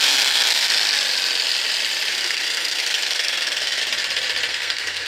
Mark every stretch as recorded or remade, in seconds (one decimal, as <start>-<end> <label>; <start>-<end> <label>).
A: 0.0-0.7 remade; 0.7-2.1 recorded; 2.1-3.8 remade; 3.8-4.5 recorded; 4.5-5.1 remade